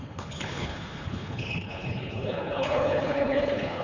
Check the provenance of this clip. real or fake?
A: fake